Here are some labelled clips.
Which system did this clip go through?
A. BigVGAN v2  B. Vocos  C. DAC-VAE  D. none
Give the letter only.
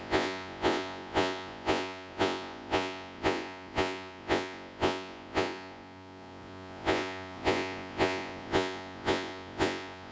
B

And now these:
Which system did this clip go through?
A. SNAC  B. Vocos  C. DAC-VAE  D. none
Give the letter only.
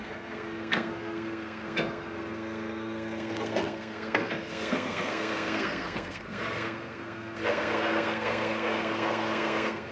A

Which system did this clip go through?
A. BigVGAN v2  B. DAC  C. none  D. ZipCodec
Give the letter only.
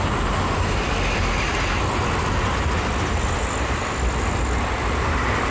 C